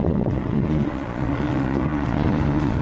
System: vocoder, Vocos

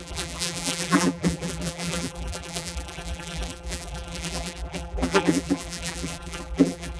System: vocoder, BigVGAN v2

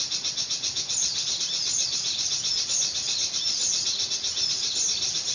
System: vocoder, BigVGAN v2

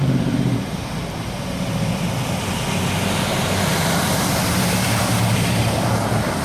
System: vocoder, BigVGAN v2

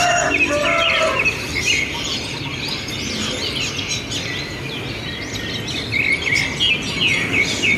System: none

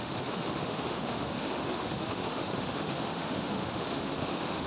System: autoencoder, DAC-VAE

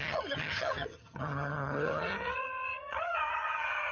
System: vocoder, HiFi-GAN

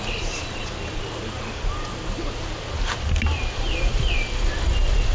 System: none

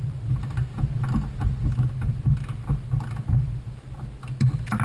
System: none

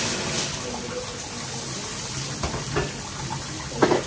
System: none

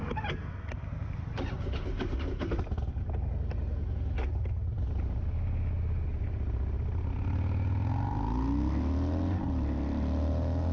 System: none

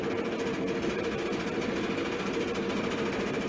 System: none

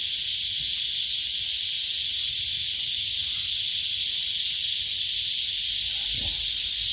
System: none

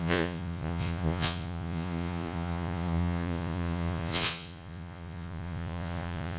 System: vocoder, Vocos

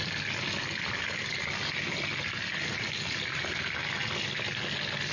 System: none